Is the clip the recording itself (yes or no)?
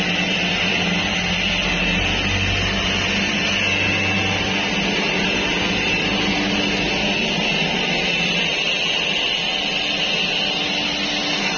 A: yes